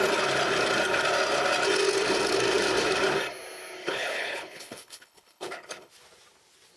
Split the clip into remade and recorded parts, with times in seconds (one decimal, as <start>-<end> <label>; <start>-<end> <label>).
0.0-3.8 recorded; 3.8-5.9 remade; 5.9-6.8 recorded